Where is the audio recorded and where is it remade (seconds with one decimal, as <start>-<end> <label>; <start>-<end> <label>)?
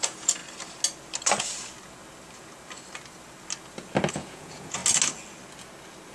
0.0-0.4 remade; 0.4-4.1 recorded; 4.1-4.8 remade; 4.8-6.1 recorded